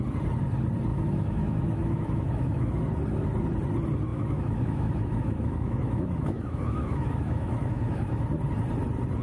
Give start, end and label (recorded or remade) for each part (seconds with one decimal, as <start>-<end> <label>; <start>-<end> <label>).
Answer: 0.0-0.9 recorded; 0.9-2.7 remade; 2.7-4.1 recorded; 4.1-8.2 remade; 8.2-9.2 recorded